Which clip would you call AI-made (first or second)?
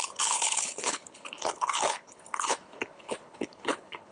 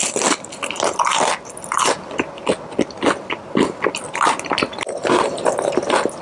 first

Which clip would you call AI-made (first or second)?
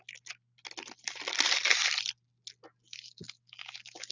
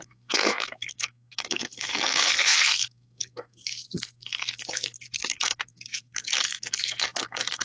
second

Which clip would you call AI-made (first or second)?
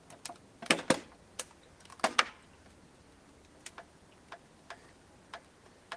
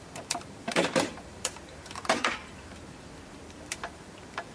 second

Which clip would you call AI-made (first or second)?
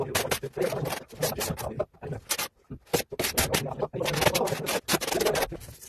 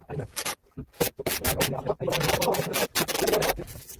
second